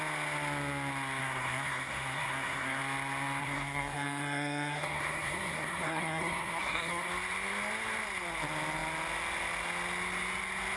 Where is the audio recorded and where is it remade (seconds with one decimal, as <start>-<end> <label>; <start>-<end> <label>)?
0.0-1.2 recorded; 1.2-2.8 remade; 2.8-3.4 recorded; 3.4-7.1 remade; 7.1-10.8 recorded